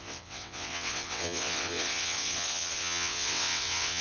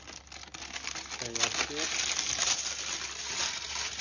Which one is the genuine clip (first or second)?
second